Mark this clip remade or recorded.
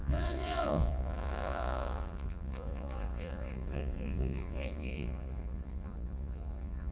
remade